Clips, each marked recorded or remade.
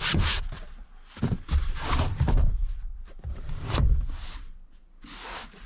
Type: recorded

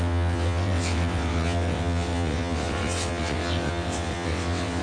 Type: remade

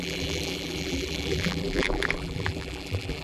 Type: remade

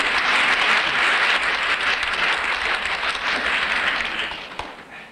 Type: recorded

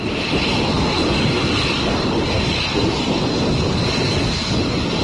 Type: recorded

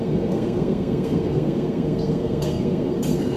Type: remade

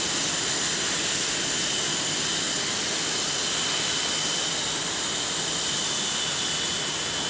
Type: recorded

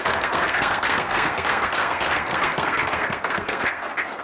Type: remade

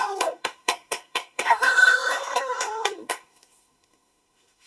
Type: remade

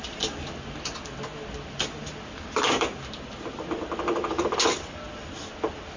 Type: recorded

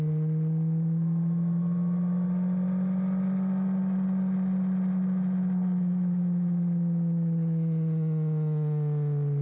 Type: recorded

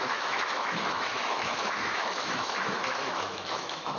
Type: remade